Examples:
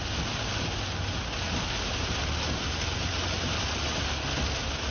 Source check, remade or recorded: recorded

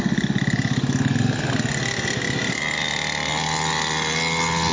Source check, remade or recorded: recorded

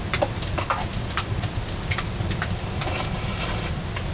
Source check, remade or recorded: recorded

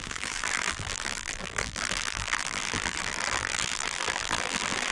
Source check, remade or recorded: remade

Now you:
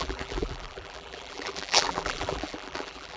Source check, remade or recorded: remade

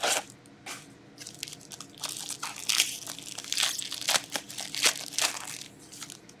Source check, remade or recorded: recorded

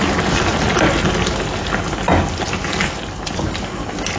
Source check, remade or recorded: recorded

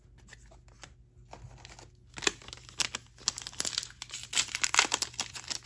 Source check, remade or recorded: recorded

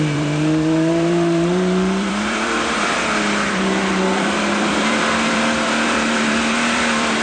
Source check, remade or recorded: remade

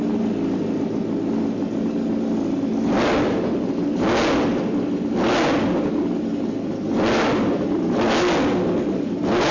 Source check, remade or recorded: recorded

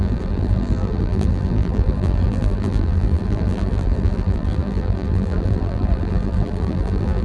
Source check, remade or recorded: remade